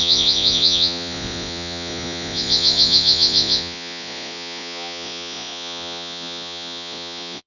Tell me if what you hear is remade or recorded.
remade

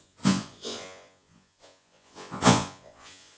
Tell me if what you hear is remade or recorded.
remade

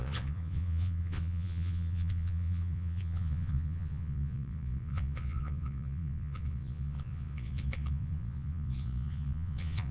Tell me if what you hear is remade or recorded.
remade